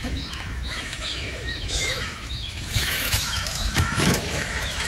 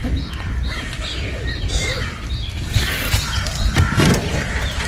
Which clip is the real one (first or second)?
second